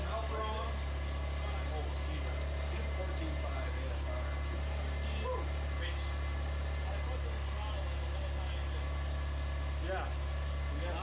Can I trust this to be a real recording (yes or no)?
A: yes